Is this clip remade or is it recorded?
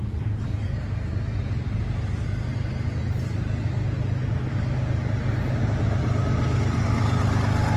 recorded